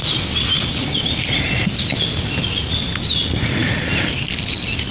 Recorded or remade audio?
recorded